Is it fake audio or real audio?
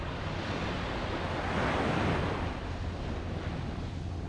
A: real